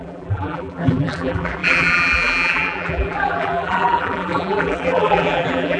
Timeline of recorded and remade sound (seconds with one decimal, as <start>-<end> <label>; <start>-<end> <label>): 0.0-5.8 remade